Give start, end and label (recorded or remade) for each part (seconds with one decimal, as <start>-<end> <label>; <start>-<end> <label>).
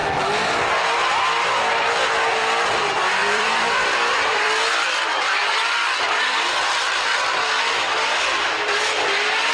0.0-3.2 recorded; 3.2-7.1 remade; 7.1-9.5 recorded